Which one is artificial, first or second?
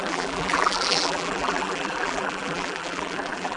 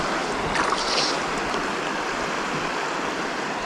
first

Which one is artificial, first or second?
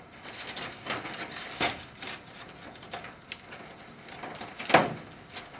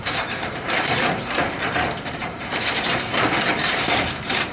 second